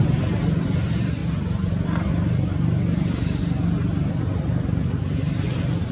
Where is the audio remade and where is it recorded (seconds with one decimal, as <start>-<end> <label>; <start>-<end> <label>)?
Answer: 0.0-5.9 recorded